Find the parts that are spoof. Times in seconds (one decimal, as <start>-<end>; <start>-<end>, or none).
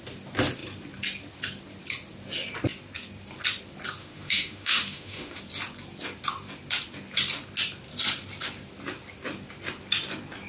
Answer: 4.0-5.4